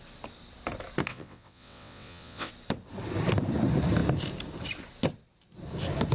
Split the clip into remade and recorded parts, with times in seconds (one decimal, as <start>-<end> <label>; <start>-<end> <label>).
0.0-1.1 recorded; 1.1-2.5 remade; 2.5-6.1 recorded